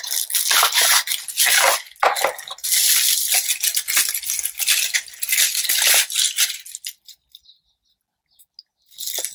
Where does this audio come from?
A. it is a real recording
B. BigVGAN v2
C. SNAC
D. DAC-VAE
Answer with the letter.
A